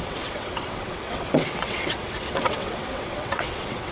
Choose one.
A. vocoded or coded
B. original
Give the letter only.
A